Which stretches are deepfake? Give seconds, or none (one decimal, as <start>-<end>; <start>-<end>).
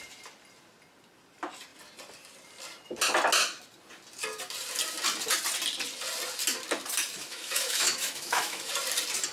7.1-8.7